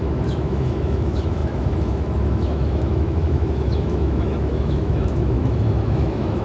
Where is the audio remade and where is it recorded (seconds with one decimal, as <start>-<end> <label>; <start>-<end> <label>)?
0.0-6.4 remade